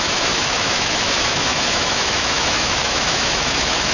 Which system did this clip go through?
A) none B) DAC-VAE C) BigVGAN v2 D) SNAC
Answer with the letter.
B